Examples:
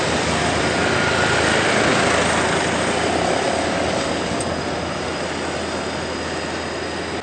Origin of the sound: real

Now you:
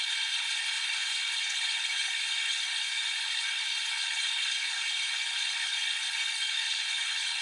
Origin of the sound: fake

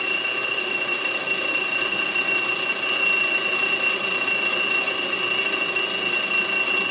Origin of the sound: real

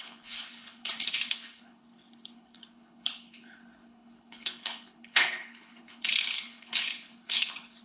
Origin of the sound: fake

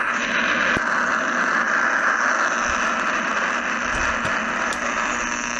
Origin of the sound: real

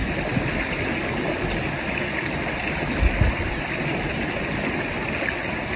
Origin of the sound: real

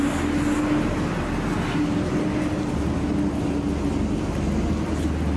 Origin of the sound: real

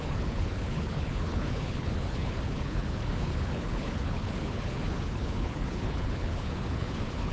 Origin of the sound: fake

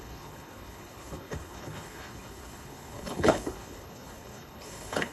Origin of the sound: fake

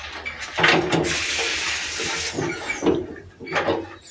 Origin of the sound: real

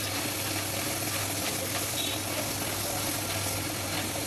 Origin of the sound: real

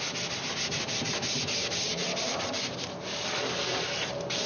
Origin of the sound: real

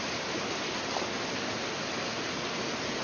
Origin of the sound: real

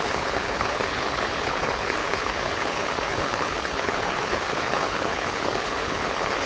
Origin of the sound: fake